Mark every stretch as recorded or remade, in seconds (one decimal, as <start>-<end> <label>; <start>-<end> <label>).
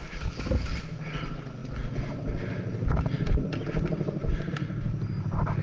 0.0-5.6 recorded